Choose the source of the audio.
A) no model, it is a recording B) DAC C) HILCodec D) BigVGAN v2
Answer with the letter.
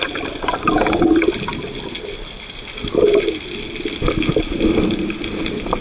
A